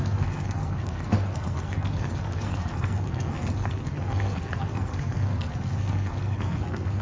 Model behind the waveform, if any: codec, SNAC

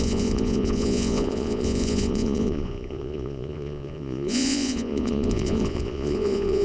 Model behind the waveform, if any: vocoder, Vocos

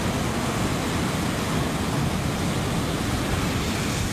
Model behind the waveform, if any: none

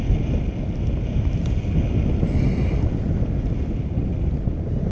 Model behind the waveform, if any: none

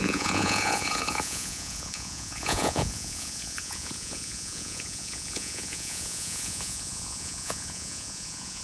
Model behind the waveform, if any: vocoder, Vocos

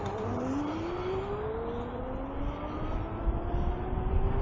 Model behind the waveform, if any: none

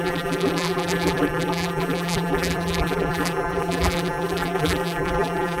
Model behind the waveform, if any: vocoder, BigVGAN v2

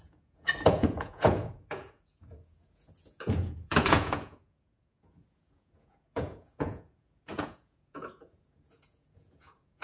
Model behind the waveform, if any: vocoder, Vocos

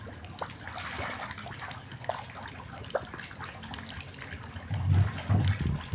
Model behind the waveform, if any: none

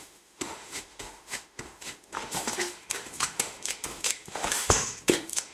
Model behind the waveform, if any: autoencoder, DAC-VAE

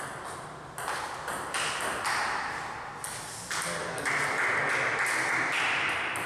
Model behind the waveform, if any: none